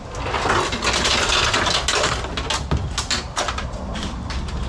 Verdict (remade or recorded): recorded